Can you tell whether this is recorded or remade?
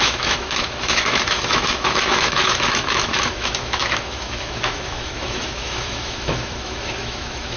remade